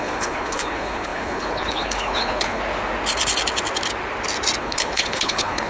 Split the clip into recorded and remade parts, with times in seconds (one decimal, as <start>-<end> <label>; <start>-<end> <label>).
0.0-2.6 remade; 2.6-4.6 recorded; 4.6-5.7 remade